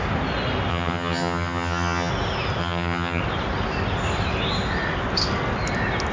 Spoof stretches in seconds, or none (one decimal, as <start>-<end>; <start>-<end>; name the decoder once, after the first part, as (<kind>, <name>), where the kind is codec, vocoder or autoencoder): 0.7-2.1 (vocoder, HiFi-GAN); 2.6-3.2